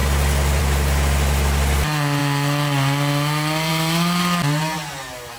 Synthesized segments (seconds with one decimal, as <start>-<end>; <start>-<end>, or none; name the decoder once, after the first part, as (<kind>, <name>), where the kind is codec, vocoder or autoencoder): none